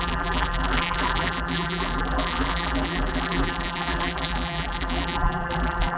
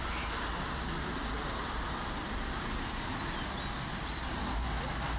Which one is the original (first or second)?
second